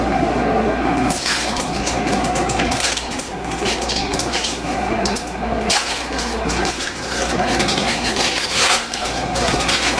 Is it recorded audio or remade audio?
remade